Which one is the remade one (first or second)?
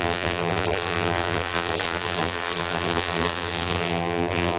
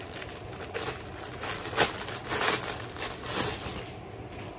first